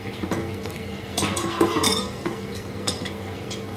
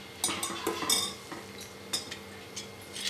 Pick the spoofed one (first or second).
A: first